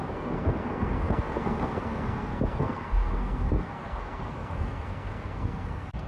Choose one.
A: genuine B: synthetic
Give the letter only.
B